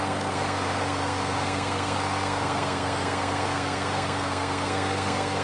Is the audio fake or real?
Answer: fake